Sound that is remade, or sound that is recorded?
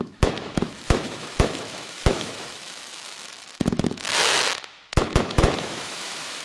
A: remade